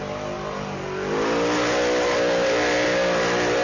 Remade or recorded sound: recorded